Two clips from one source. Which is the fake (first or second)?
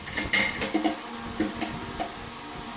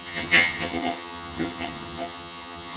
second